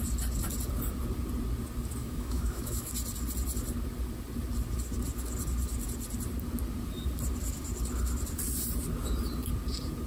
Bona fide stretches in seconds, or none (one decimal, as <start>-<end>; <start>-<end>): 0.0-2.0; 2.9-10.1